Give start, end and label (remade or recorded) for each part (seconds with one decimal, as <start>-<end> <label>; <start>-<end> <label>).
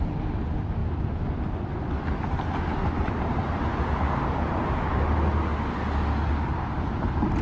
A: 0.0-7.4 recorded